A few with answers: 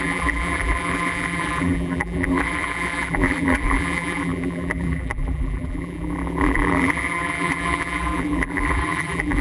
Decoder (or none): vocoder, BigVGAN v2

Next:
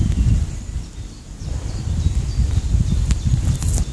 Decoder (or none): none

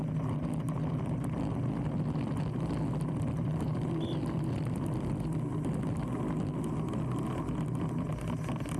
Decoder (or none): none